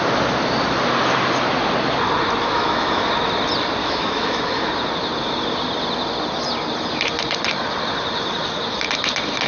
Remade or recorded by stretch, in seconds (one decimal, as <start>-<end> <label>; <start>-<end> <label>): 0.0-2.4 recorded; 2.4-3.1 remade; 3.1-3.8 recorded; 3.8-4.7 remade; 4.7-9.5 recorded